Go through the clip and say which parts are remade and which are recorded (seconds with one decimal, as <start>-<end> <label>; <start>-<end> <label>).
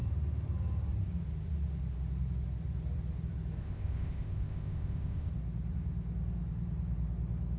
0.0-3.6 recorded; 3.6-5.3 remade; 5.3-7.6 recorded